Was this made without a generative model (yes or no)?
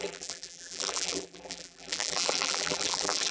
no